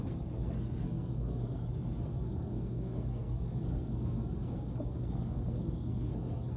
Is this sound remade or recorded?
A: remade